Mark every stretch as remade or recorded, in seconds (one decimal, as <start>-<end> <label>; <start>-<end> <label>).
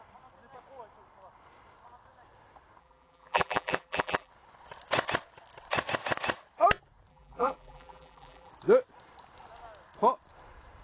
0.0-2.8 recorded; 2.8-4.3 remade; 4.3-7.1 recorded; 7.1-8.5 remade; 8.5-10.8 recorded